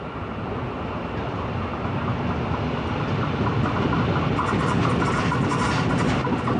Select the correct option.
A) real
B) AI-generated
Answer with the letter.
A